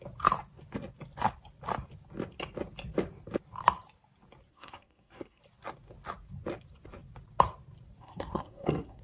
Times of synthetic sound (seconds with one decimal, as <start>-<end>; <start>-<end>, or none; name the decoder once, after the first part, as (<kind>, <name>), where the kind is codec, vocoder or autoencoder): 4.5-5.4 (codec, SNAC); 8.0-9.0